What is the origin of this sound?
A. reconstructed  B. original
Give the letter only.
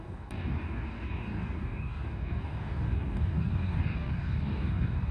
A